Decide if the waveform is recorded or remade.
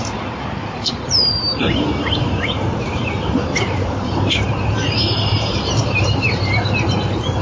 remade